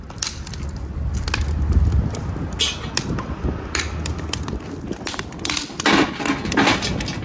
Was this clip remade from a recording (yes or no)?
no